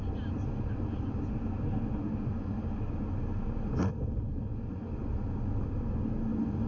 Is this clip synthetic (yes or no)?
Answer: no